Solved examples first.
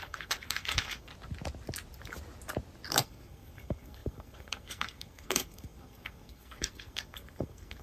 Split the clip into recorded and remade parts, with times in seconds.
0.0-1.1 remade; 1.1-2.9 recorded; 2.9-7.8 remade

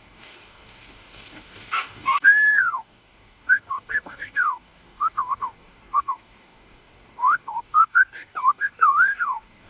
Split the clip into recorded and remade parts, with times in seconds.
0.0-9.7 remade